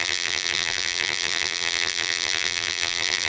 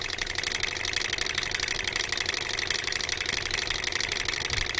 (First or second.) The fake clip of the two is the first